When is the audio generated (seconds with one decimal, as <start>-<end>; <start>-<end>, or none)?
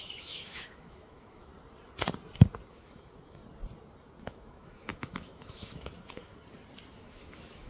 0.0-1.5; 2.7-3.4; 4.2-6.3; 6.9-7.7